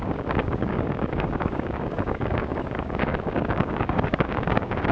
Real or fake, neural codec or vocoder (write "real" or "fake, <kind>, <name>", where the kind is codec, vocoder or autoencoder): fake, codec, DAC